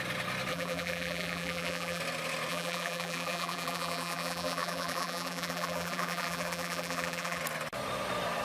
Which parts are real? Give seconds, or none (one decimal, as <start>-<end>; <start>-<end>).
0.0-0.5; 2.0-2.5; 7.4-8.4